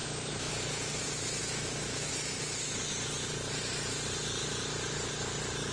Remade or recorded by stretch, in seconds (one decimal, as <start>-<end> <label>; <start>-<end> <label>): 0.0-0.5 remade; 0.5-1.4 recorded; 1.4-2.1 remade; 2.1-5.7 recorded